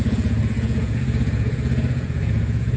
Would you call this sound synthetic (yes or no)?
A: yes